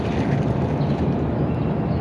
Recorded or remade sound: recorded